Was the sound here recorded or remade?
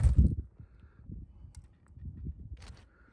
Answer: recorded